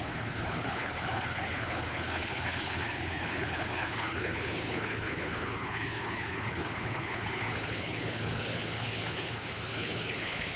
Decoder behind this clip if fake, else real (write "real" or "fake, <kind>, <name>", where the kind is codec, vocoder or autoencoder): fake, codec, HILCodec